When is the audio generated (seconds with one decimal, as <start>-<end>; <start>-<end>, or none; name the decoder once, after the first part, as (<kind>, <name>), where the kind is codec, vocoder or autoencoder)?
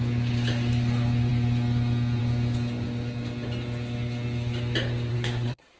5.1-5.8 (codec, SNAC)